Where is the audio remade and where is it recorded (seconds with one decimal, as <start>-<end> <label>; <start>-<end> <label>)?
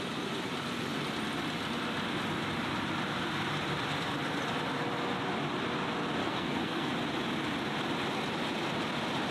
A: 0.0-6.2 recorded; 6.2-6.9 remade; 6.9-9.3 recorded